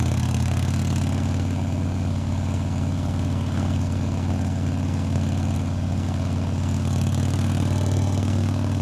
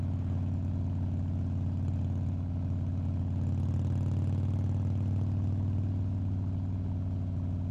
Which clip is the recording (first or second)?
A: second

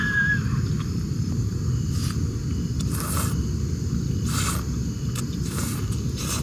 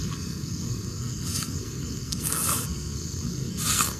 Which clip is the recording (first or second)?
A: first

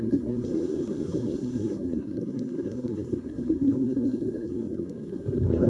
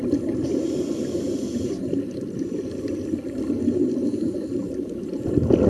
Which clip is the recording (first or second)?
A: second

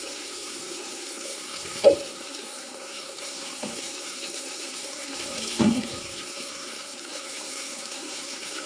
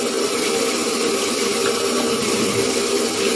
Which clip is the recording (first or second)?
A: second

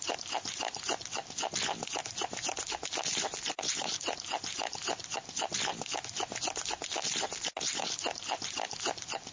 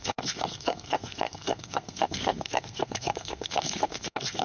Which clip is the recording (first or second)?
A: first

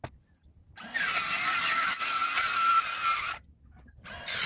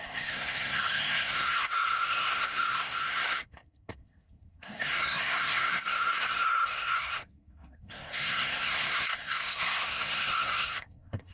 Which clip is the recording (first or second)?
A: first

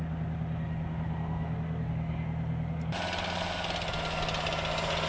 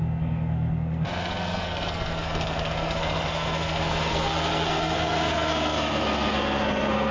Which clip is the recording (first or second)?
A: first